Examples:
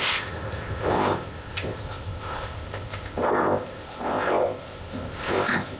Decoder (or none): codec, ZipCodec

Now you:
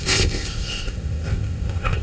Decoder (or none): codec, ZipCodec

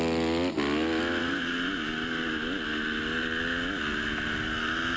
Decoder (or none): none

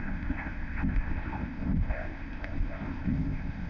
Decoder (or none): codec, ZipCodec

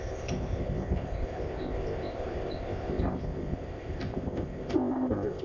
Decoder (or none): codec, ZipCodec